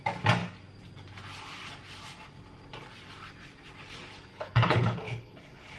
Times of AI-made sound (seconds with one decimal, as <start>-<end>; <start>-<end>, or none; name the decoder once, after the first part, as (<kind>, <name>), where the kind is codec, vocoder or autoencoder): 4.3-5.8 (codec, HILCodec)